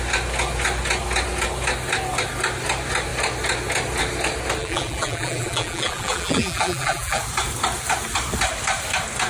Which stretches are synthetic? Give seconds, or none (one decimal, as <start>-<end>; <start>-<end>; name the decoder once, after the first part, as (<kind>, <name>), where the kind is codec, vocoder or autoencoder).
4.6-7.2 (vocoder, BigVGAN v2)